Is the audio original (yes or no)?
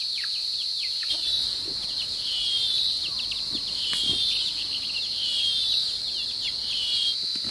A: yes